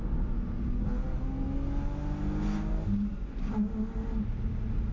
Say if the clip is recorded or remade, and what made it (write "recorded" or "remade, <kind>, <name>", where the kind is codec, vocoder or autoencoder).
recorded